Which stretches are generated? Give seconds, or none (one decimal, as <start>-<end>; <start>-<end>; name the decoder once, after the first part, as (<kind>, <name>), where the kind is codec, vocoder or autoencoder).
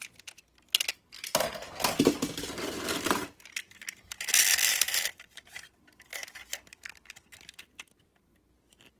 4.7-7.1 (vocoder, BigVGAN v2)